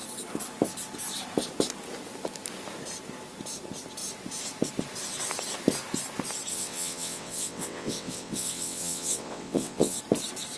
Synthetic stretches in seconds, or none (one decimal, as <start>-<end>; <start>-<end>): 6.5-10.0